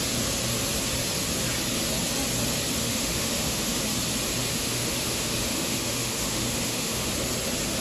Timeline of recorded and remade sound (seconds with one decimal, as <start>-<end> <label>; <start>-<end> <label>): 0.0-2.8 recorded; 2.8-3.8 remade; 3.8-4.5 recorded; 4.5-7.1 remade; 7.1-7.8 recorded